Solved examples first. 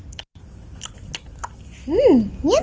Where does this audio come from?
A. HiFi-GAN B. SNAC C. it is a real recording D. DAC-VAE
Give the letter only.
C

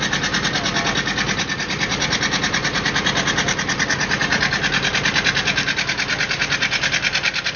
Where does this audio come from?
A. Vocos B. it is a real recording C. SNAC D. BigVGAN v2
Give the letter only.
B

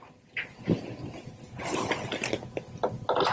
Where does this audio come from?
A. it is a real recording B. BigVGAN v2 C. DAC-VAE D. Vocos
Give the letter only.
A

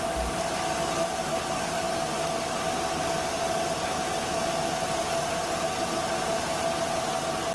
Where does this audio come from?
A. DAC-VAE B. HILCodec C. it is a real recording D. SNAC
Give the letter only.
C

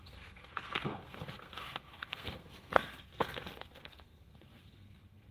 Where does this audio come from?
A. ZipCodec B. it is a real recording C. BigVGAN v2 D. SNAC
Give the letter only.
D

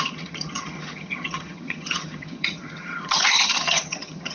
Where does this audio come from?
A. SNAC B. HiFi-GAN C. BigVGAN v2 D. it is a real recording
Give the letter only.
B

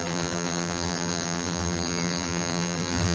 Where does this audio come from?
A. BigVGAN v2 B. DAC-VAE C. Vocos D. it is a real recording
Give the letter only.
A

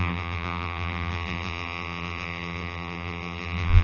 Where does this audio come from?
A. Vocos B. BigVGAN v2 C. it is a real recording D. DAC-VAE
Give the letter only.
B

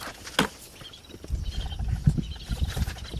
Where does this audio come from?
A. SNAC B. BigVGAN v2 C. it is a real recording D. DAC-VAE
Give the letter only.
C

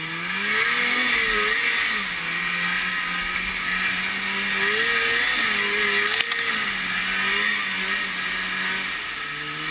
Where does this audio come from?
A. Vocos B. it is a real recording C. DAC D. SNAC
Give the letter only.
B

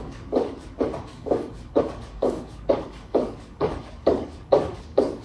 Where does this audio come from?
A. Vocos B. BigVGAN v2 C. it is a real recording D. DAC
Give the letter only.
D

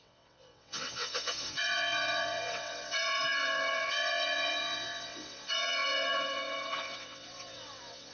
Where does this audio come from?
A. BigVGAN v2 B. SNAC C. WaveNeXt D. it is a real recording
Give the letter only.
C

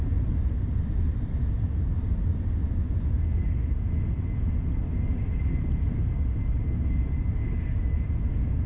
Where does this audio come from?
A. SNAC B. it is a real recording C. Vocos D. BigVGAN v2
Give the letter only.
B